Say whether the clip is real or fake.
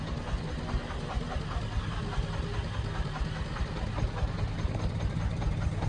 real